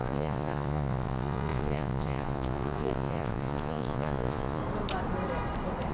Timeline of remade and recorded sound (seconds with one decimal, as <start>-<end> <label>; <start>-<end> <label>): 0.0-4.6 remade; 4.6-5.9 recorded